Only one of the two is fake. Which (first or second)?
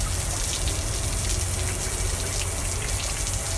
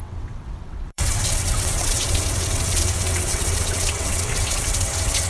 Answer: second